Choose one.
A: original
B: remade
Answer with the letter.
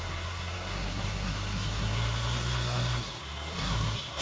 B